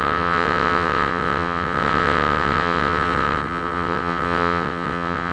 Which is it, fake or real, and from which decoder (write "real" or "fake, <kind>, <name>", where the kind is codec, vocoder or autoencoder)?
fake, vocoder, WaveNeXt